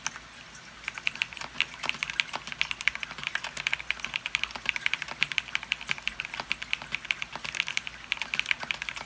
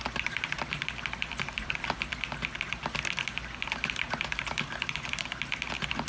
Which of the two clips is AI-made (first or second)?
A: second